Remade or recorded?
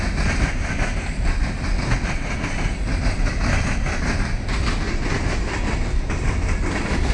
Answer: recorded